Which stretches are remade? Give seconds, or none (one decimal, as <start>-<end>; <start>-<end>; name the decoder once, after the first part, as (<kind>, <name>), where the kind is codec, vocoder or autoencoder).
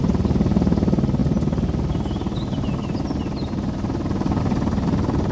none